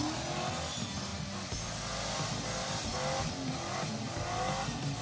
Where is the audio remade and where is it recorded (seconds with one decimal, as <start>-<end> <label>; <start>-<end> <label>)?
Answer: 0.0-5.0 recorded